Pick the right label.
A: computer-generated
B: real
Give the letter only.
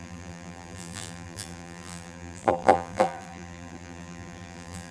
A